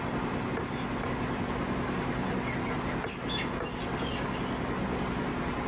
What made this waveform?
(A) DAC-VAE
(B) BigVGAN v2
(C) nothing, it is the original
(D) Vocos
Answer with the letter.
C